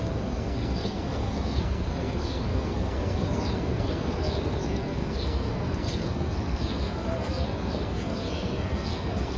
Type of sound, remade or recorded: remade